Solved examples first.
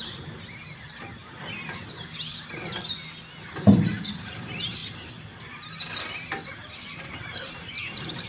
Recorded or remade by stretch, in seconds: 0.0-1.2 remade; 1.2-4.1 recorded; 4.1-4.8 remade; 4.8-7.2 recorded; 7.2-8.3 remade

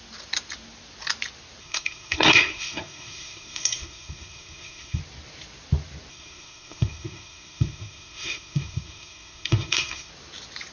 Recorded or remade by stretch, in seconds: 0.0-1.6 recorded; 1.6-5.0 remade; 5.0-6.1 recorded; 6.1-10.1 remade; 10.1-10.7 recorded

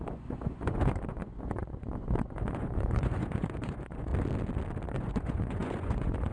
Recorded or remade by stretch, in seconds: 0.0-4.1 remade; 4.1-4.9 recorded; 4.9-6.3 remade

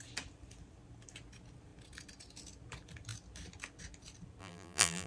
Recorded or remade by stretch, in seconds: 0.0-4.4 recorded; 4.4-5.1 remade

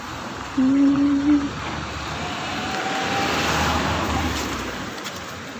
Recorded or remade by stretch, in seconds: 0.0-2.5 remade; 2.5-3.7 recorded; 3.7-5.6 remade

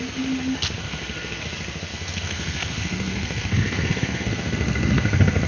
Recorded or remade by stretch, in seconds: 0.0-0.8 recorded; 0.8-1.4 remade; 1.4-1.9 recorded; 1.9-5.5 remade